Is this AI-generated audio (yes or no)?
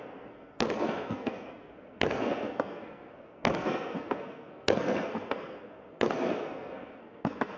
yes